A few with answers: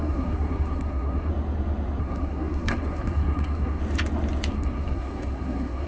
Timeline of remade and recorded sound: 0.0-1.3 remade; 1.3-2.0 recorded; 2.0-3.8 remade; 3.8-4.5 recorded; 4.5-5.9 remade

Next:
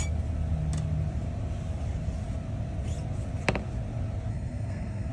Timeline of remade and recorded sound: 0.0-4.3 recorded; 4.3-5.1 remade

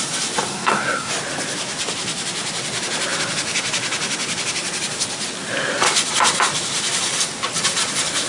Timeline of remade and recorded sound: 0.0-0.5 recorded; 0.5-1.1 remade; 1.1-8.3 recorded

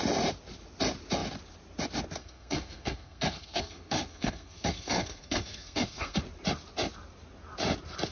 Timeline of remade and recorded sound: 0.0-2.2 recorded; 2.2-6.2 remade; 6.2-8.1 recorded

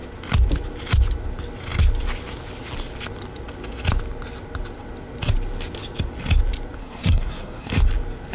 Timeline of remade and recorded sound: 0.0-6.8 recorded; 6.8-7.7 remade; 7.7-8.3 recorded